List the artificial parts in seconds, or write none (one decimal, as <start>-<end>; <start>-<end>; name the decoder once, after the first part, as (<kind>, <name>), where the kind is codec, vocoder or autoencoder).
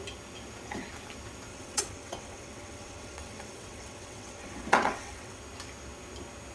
1.5-5.4 (vocoder, WaveNeXt)